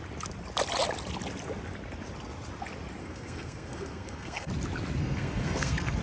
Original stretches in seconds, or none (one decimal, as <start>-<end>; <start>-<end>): 0.0-3.0; 4.5-5.0